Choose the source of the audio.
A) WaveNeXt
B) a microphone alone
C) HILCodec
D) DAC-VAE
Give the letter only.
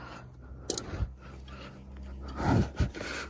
B